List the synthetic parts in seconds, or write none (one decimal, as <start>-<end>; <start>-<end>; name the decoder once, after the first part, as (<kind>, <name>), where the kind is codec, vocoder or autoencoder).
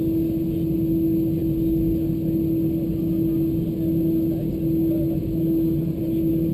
none